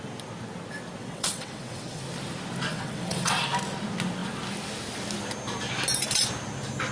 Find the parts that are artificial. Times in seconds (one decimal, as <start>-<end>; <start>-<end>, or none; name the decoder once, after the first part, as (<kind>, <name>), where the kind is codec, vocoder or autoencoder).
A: 1.0-2.0 (vocoder, WaveNeXt); 2.7-3.4